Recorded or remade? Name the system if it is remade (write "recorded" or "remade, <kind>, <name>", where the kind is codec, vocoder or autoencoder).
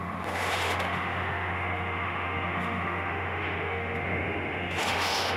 remade, autoencoder, DAC-VAE